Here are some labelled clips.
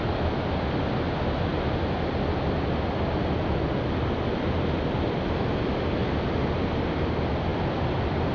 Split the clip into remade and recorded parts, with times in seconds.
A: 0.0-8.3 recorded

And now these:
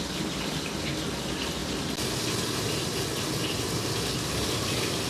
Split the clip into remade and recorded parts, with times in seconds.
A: 0.0-5.1 recorded

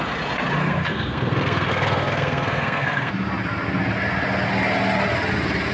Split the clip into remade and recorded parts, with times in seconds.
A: 0.0-0.6 recorded; 0.6-3.1 remade; 3.1-5.7 recorded

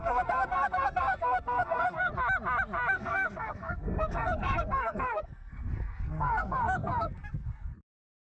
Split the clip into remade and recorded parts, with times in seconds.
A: 0.0-2.1 remade; 2.1-2.9 recorded; 2.9-8.2 remade